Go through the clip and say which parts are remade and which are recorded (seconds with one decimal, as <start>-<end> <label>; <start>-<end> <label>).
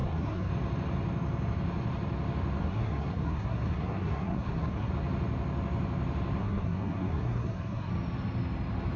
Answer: 0.0-0.5 remade; 0.5-2.6 recorded; 2.6-4.9 remade; 4.9-6.4 recorded; 6.4-7.9 remade; 7.9-9.0 recorded